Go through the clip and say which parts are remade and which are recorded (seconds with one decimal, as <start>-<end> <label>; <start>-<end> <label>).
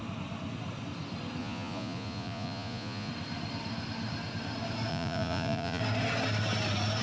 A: 0.0-1.4 recorded; 1.4-3.1 remade; 3.1-4.9 recorded; 4.9-5.8 remade; 5.8-7.0 recorded